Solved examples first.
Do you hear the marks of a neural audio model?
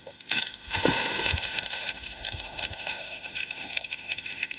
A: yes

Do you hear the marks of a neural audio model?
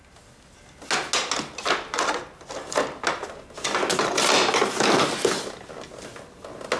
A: no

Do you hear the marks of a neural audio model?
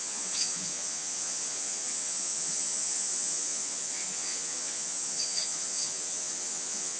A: yes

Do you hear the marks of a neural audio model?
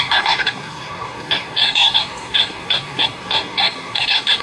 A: yes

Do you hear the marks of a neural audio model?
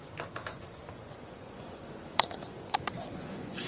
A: yes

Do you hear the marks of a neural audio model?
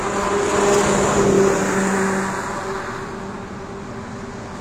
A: no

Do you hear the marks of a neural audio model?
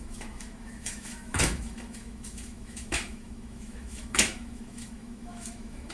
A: yes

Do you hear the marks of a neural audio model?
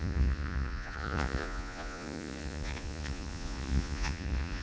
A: yes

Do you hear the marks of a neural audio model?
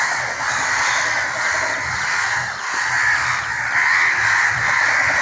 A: no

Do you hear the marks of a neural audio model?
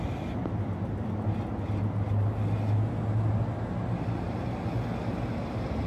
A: no